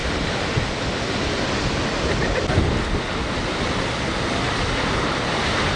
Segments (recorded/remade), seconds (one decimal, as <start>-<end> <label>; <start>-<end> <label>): 0.0-5.8 recorded